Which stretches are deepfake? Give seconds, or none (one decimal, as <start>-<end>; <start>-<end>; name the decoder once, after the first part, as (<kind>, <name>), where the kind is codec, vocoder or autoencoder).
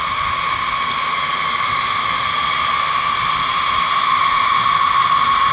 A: none